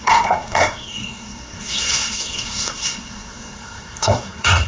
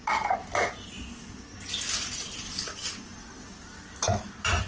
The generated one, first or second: first